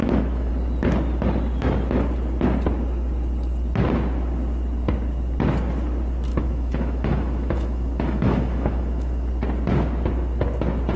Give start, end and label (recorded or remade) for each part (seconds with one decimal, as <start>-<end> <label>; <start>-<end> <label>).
0.0-0.5 remade; 0.5-6.3 recorded; 6.3-9.3 remade; 9.3-11.0 recorded